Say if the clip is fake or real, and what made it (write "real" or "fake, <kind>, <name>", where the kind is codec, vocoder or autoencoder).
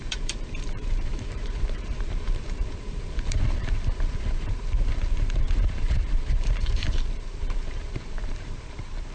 fake, vocoder, BigVGAN v2